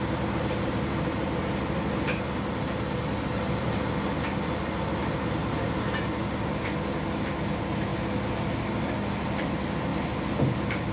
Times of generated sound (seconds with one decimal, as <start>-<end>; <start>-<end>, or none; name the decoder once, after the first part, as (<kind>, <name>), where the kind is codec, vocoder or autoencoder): none